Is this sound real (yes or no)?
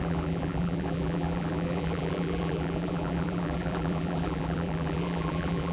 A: no